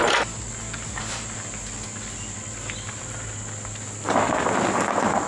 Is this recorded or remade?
recorded